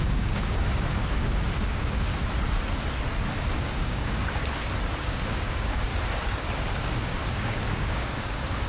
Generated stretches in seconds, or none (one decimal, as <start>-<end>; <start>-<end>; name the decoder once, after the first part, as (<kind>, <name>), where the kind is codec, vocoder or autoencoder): 0.0-2.1 (codec, DAC); 3.6-4.4; 5.0-5.9; 6.4-8.7